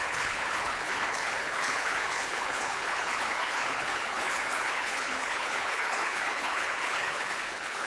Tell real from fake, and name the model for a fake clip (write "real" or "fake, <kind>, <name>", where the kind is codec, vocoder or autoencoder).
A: fake, codec, HILCodec